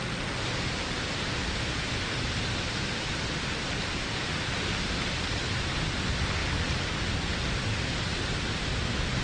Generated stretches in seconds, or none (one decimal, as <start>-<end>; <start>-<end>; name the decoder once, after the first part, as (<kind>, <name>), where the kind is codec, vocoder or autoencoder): none